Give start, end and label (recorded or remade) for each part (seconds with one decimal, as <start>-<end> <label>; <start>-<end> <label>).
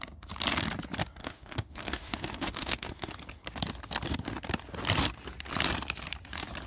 0.0-1.2 recorded; 1.2-3.1 remade; 3.1-6.7 recorded